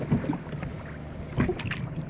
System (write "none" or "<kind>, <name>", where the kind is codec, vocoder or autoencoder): none